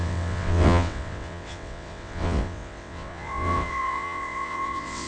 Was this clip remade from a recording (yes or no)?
yes